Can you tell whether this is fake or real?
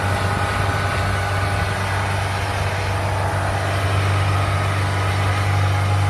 real